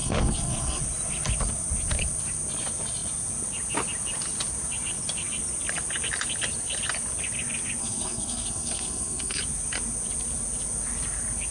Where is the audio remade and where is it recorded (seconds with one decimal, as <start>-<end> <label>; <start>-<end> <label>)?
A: 0.0-0.8 remade; 0.8-7.8 recorded; 7.8-9.4 remade; 9.4-11.5 recorded